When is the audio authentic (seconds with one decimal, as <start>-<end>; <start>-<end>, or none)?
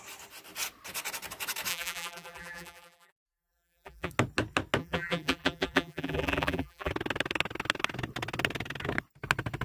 0.0-1.7; 4.1-4.8; 6.9-9.6